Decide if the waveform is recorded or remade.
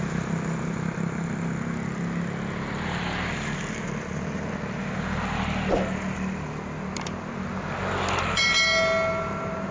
recorded